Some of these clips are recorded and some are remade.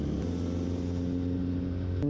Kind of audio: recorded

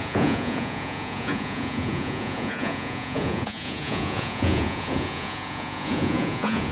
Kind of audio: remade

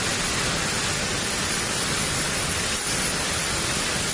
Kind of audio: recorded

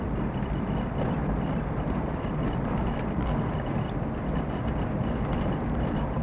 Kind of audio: recorded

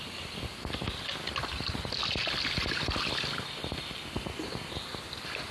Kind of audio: recorded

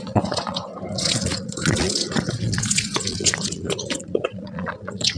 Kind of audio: remade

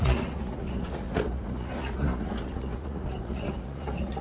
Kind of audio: remade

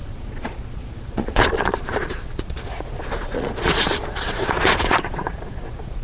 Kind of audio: remade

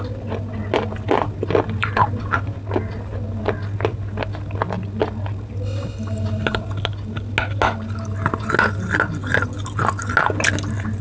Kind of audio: recorded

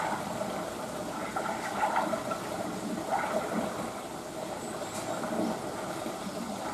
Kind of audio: recorded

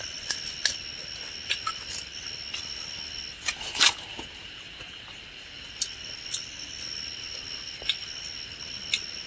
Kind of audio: recorded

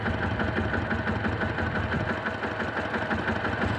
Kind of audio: recorded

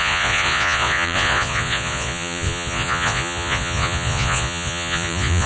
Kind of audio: remade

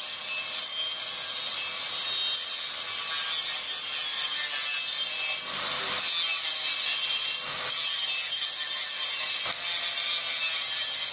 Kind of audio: recorded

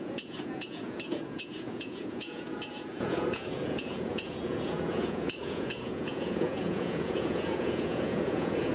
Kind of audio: remade